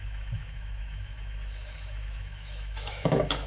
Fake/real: fake